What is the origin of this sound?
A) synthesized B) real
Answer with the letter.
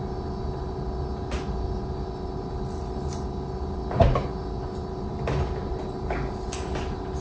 B